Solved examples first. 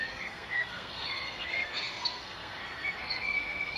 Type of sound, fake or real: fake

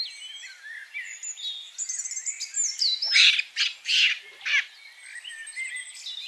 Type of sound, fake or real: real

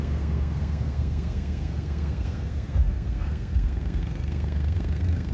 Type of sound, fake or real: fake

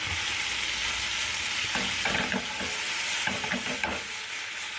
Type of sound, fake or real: real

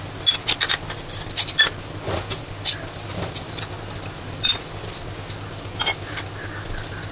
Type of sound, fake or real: real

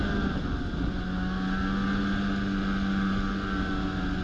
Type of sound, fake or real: real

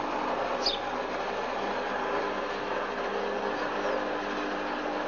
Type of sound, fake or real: real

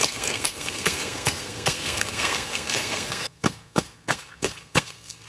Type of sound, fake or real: fake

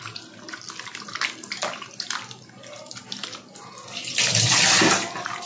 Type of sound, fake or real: real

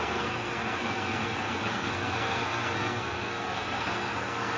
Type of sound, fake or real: fake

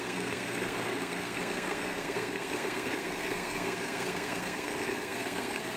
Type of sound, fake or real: fake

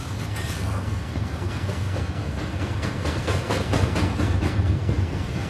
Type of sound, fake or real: fake